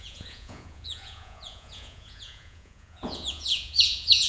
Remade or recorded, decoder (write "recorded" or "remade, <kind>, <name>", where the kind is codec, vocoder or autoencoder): remade, vocoder, Vocos